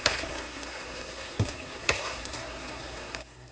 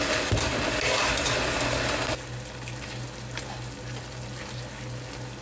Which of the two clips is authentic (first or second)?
second